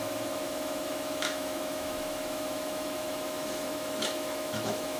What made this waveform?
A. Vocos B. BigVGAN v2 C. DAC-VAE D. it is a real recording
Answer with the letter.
C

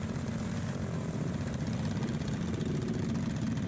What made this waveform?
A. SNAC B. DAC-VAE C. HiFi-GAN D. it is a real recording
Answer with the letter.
D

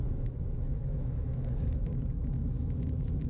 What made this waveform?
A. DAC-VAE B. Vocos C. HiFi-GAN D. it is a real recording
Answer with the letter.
A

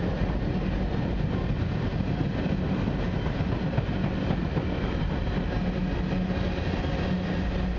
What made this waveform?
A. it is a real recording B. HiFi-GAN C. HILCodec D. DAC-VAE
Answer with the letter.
A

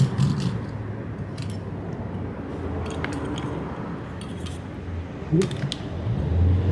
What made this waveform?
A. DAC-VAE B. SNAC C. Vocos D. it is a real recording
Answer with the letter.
D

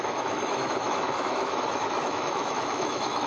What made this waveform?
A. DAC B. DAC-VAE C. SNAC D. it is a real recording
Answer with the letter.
B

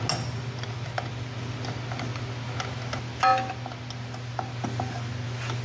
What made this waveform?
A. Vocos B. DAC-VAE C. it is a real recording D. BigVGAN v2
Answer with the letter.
C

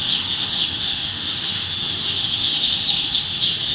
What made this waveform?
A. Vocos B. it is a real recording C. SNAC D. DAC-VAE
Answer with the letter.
D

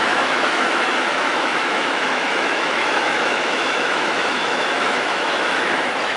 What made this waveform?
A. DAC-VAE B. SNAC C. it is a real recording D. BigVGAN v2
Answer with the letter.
A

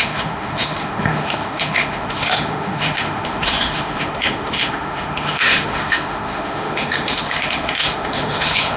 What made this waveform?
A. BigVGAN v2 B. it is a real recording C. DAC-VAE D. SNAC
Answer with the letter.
C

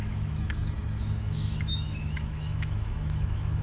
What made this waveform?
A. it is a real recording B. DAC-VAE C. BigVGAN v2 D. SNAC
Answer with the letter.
B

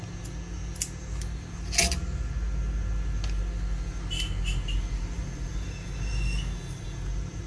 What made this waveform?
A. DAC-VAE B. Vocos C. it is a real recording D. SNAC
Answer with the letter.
C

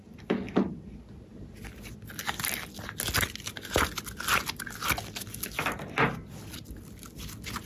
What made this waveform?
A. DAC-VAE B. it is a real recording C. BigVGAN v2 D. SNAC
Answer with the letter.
B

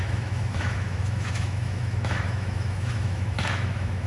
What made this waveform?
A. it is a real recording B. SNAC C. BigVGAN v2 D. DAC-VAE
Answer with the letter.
D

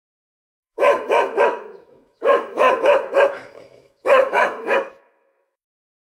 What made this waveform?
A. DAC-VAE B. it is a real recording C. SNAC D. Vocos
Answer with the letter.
A